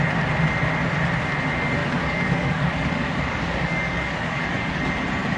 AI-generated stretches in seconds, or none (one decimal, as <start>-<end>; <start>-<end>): 1.8-4.8